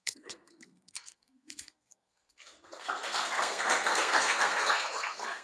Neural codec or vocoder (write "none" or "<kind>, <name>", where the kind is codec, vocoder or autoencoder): codec, SNAC